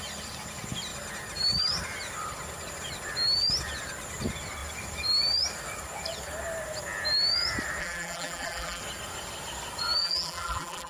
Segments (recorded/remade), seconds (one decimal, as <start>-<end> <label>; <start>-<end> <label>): 0.0-7.8 recorded; 7.8-8.8 remade; 8.8-10.0 recorded; 10.0-10.9 remade